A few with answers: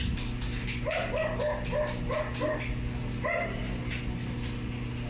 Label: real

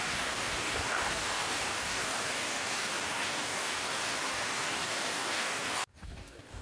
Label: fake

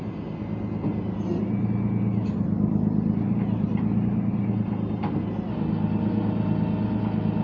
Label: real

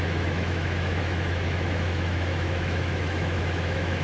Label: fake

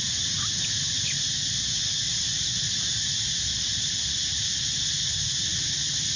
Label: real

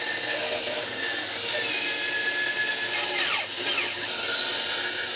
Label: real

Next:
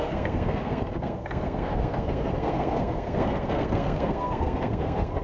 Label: fake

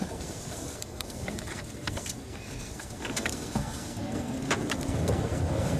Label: fake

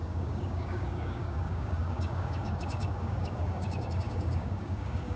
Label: fake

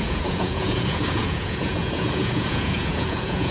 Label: fake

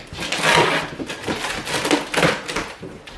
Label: real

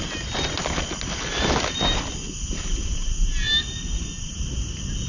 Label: real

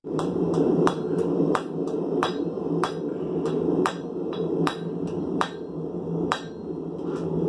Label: fake